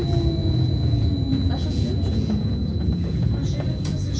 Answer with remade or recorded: remade